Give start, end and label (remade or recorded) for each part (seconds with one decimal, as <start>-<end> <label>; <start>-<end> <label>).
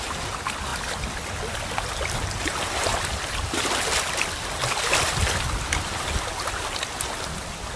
0.0-0.7 recorded; 0.7-1.4 remade; 1.4-2.9 recorded; 2.9-6.1 remade; 6.1-7.8 recorded